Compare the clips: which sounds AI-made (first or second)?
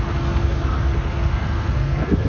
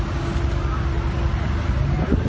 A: first